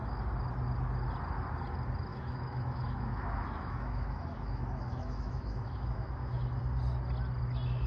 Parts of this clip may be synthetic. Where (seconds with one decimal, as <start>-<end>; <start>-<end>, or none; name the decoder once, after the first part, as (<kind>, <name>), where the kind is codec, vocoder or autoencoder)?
2.1-6.6 (autoencoder, DAC-VAE)